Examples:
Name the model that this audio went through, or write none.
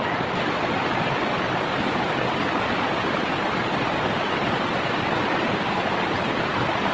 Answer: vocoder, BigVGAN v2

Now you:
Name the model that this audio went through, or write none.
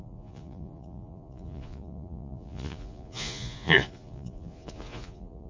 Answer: vocoder, Vocos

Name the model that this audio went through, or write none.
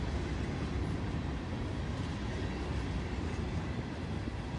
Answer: none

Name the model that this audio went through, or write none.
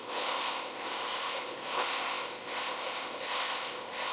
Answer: codec, ZipCodec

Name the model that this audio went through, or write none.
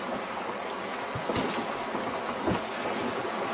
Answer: none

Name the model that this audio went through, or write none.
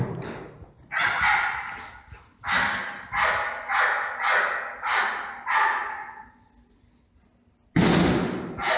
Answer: none